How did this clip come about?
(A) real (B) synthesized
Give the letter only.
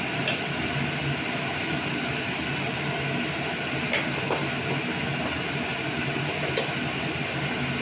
A